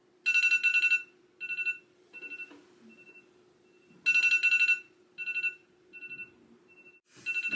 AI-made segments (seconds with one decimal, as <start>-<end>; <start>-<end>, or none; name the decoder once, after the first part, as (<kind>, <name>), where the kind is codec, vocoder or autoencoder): none